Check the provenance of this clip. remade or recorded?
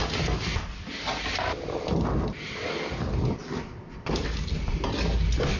recorded